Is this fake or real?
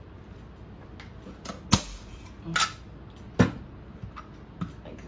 real